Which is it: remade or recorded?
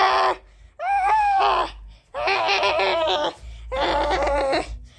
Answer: recorded